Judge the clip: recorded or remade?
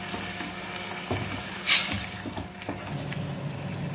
recorded